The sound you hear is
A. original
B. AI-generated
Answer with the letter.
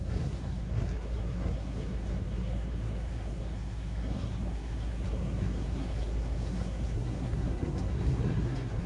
B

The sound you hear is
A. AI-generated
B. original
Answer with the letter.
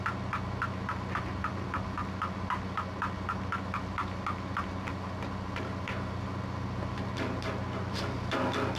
B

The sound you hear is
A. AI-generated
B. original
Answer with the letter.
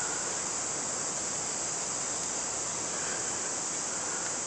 B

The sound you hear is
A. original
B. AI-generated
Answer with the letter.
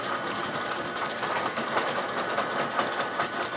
A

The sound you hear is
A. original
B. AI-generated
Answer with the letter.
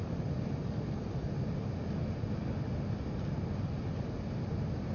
A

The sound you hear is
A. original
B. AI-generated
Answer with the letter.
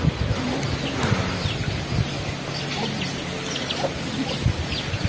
A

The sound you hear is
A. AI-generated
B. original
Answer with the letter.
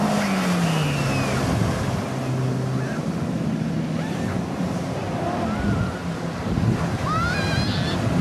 B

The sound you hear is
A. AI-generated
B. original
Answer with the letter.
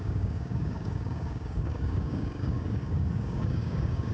A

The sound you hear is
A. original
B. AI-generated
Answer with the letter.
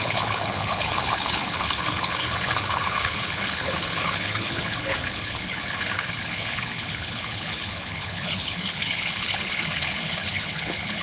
B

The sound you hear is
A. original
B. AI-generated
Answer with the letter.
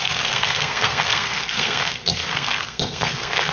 B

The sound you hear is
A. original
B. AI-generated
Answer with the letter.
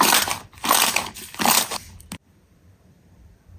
B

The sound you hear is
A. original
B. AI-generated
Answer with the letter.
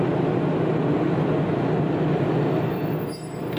A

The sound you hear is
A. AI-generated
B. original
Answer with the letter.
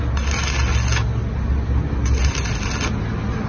B